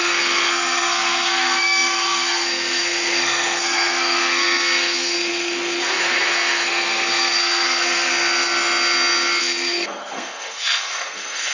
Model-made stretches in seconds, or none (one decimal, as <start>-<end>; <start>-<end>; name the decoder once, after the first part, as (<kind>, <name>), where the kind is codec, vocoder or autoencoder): 0.0-8.1 (codec, SNAC); 9.4-11.5